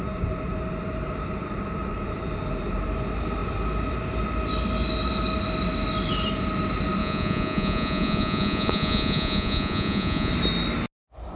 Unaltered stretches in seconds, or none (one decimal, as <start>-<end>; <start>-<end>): 0.0-7.0; 10.3-11.4